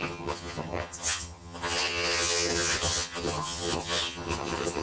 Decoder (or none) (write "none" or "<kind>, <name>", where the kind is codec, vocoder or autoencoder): vocoder, HiFi-GAN